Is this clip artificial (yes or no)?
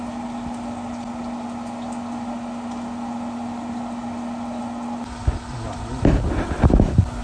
no